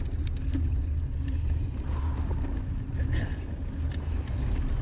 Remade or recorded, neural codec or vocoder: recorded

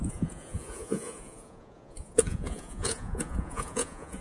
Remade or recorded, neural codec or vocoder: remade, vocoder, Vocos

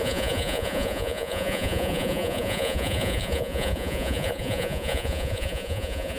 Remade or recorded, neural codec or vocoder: remade, vocoder, Vocos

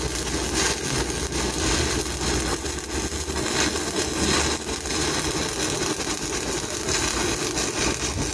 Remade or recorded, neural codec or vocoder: recorded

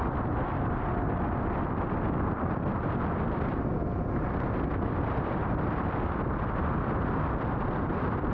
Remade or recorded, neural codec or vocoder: recorded